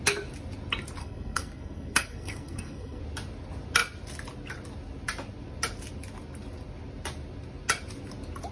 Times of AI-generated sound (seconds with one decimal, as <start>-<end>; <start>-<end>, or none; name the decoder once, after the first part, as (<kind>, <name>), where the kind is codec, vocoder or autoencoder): 1.0-3.0 (codec, SNAC)